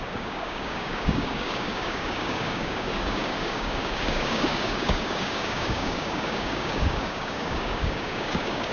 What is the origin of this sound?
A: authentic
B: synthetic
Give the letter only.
B